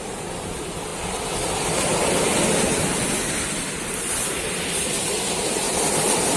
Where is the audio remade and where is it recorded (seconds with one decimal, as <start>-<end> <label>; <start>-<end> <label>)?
0.0-6.4 recorded